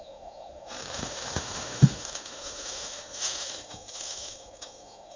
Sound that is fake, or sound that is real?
fake